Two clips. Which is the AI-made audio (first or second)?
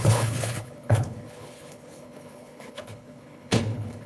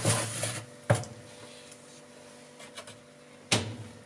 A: first